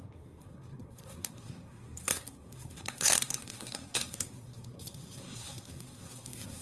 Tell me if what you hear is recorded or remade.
remade